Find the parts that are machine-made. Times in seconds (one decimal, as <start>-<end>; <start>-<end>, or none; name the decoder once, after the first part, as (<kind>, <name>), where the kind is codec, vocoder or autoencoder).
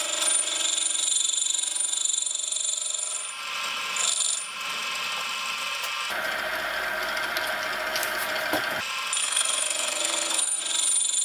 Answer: 9.2-10.6 (codec, SNAC)